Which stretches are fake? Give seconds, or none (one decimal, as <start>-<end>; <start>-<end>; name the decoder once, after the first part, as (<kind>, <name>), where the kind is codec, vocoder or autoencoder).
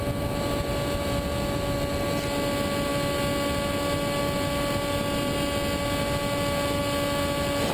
none